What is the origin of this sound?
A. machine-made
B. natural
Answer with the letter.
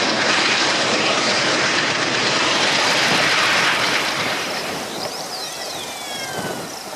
A